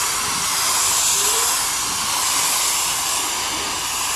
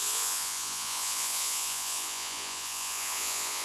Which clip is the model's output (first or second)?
second